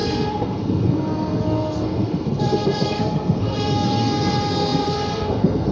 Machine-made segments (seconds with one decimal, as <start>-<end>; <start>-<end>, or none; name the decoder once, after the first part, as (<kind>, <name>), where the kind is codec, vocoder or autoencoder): 0.0-5.7 (codec, SNAC)